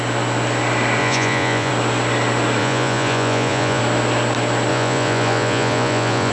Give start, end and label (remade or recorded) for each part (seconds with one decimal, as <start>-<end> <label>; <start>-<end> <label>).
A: 0.0-1.0 recorded; 1.0-1.7 remade; 1.7-2.6 recorded; 2.6-3.8 remade; 3.8-4.7 recorded; 4.7-6.3 remade